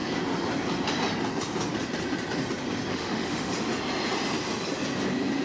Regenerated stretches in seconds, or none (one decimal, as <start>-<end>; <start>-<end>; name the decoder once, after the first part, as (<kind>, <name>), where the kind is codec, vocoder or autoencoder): 2.9-3.5 (autoencoder, DAC-VAE)